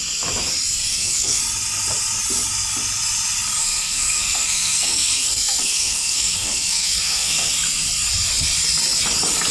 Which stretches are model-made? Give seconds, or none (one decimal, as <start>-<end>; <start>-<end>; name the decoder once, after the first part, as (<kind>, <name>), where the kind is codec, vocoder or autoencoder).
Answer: 0.9-1.4 (codec, SNAC); 3.6-7.5